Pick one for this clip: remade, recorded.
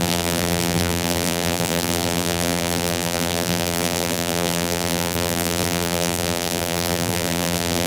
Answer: remade